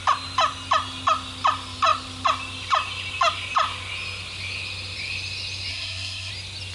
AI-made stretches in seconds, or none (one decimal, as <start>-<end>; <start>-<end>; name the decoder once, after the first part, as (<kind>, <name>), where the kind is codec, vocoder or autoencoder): 5.7-6.3 (codec, SNAC)